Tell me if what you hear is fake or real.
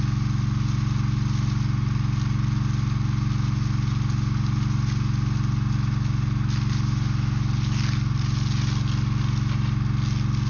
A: real